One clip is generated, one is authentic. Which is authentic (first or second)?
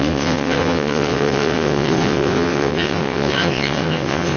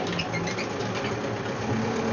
second